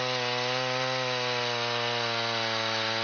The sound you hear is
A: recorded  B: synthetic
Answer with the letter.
A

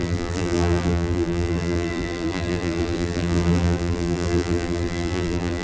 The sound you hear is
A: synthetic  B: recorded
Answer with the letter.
A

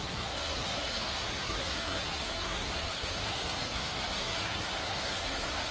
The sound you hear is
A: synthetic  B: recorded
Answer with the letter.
A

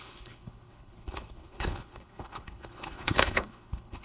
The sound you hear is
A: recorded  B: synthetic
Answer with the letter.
B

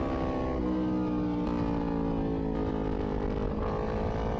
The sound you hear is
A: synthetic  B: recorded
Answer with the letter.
B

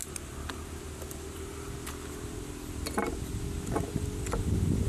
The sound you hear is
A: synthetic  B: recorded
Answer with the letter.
B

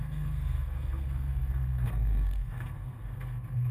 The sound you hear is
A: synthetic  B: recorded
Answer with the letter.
A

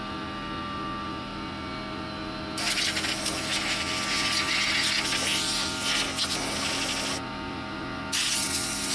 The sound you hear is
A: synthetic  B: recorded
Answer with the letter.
B